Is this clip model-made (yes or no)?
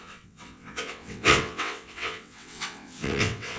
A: yes